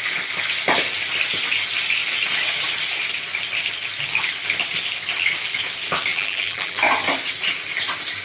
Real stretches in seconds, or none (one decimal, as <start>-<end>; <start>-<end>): 0.0-6.1; 6.8-8.2